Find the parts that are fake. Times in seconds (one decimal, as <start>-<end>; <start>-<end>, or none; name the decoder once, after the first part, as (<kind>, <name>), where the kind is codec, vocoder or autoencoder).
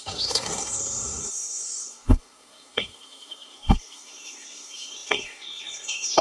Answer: 0.0-6.2 (codec, SNAC)